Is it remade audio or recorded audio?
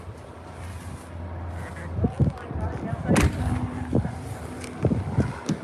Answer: recorded